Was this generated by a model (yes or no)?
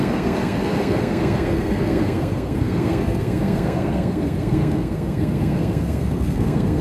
yes